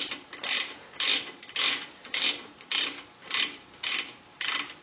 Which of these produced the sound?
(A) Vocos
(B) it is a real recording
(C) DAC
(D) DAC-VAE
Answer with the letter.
B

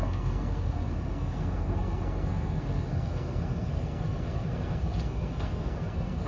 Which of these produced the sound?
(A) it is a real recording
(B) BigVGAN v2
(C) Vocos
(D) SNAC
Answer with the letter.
D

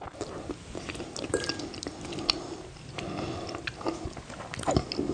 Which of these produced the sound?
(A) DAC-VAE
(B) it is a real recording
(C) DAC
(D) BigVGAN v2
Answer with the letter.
B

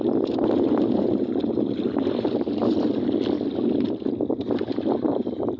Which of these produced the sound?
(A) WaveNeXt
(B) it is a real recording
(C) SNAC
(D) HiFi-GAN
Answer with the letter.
B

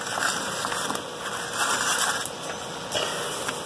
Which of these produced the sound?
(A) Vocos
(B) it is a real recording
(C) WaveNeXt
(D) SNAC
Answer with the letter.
B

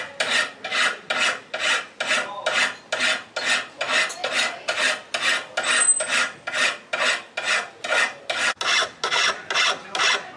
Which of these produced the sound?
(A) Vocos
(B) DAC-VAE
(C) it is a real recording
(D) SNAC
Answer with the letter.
C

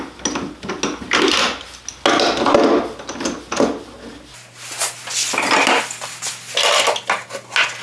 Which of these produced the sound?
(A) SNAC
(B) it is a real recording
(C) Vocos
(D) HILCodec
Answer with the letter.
B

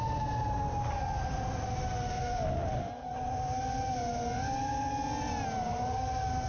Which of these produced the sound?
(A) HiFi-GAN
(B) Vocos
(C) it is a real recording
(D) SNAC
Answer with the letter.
C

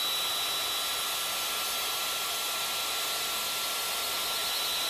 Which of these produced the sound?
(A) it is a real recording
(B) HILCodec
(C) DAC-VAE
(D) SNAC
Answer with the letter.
A